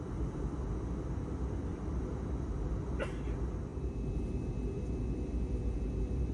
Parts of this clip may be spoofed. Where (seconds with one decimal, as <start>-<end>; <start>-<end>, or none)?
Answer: 1.7-2.2